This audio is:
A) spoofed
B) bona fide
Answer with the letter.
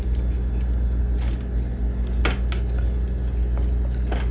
B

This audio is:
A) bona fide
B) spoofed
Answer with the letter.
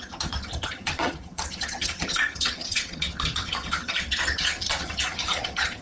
B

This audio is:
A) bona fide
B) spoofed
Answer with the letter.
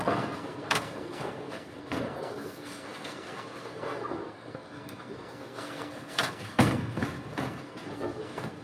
B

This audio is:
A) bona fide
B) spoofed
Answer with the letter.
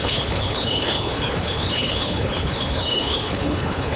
B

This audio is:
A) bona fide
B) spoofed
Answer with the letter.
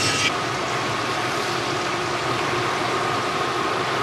A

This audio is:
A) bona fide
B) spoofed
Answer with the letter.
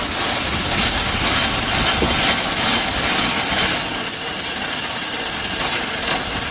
A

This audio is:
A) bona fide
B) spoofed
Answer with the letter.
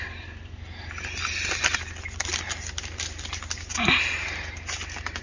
A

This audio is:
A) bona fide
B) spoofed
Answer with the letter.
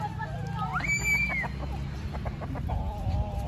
A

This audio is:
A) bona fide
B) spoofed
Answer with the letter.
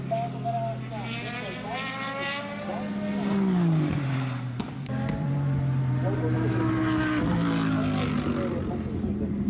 A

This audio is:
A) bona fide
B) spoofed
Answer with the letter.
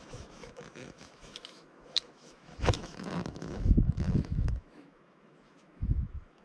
B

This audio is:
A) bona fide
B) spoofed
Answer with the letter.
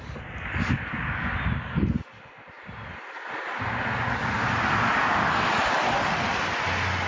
A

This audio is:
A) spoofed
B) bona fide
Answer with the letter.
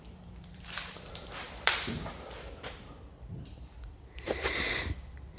A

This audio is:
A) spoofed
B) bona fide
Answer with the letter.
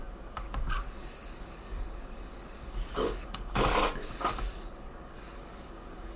A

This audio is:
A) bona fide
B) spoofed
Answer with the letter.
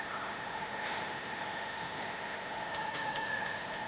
B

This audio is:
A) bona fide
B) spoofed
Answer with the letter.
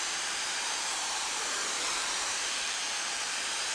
B